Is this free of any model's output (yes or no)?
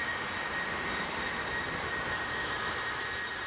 no